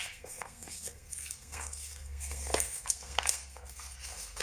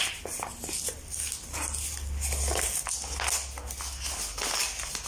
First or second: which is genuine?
second